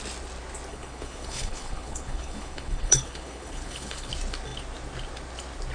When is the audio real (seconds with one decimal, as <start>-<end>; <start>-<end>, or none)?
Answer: 0.0-0.7; 4.1-5.7